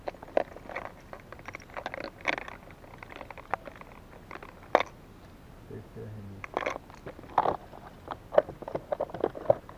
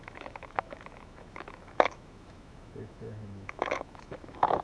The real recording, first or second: first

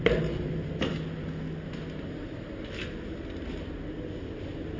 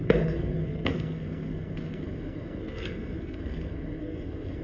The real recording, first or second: first